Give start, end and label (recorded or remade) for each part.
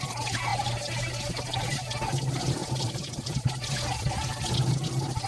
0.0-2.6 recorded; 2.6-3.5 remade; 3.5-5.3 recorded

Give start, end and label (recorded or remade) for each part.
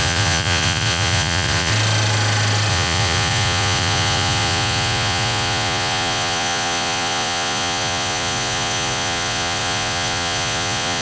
0.0-1.7 remade; 1.7-2.7 recorded; 2.7-11.0 remade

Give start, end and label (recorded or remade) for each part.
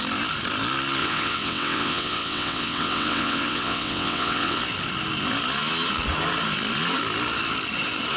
0.0-1.0 recorded; 1.0-4.6 remade; 4.6-8.2 recorded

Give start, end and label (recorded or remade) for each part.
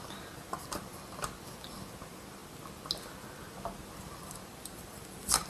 0.0-5.5 recorded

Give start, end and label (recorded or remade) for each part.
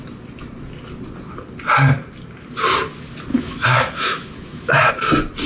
0.0-3.3 recorded; 3.3-4.9 remade; 4.9-5.5 recorded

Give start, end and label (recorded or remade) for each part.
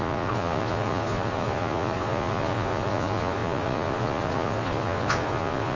0.0-5.7 remade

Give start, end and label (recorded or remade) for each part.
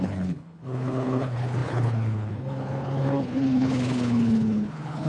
0.0-5.1 remade